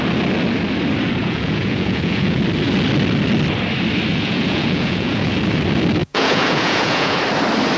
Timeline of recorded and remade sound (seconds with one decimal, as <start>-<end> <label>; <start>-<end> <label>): 0.0-1.2 recorded; 1.2-2.4 remade; 2.4-4.1 recorded; 4.1-5.3 remade; 5.3-6.0 recorded; 6.0-7.2 remade; 7.2-7.8 recorded